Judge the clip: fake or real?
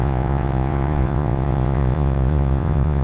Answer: fake